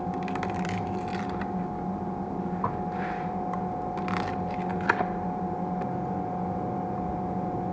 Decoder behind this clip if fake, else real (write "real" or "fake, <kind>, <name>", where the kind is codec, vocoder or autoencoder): real